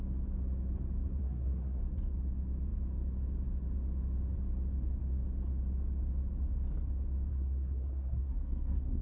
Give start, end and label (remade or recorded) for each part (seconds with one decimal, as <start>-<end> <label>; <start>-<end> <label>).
0.0-1.2 recorded; 1.2-1.8 remade; 1.8-7.3 recorded; 7.3-9.0 remade